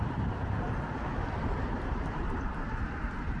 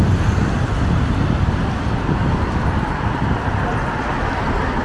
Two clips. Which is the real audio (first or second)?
second